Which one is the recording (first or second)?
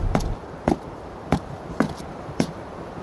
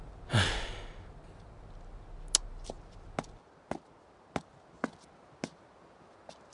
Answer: second